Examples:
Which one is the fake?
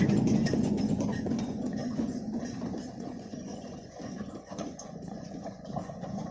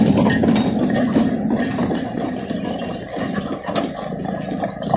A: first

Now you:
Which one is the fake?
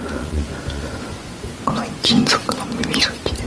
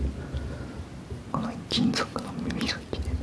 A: first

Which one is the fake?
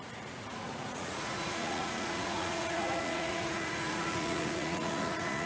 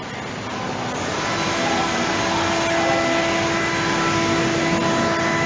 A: first